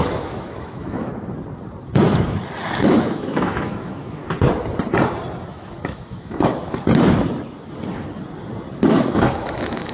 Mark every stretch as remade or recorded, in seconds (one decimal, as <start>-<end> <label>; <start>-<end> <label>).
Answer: 0.0-1.1 remade; 1.1-2.8 recorded; 2.8-4.2 remade; 4.2-5.5 recorded; 5.5-6.5 remade; 6.5-8.9 recorded; 8.9-9.9 remade